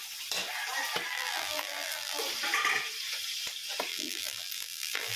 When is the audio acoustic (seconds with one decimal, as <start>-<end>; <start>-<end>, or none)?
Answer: 0.0-1.1; 2.2-3.9